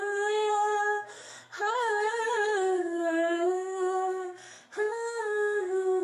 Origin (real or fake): fake